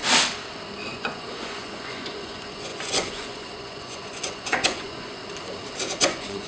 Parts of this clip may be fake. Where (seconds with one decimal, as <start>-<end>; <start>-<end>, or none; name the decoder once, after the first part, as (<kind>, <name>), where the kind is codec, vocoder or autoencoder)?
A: 0.9-5.2 (vocoder, Vocos); 6.0-6.5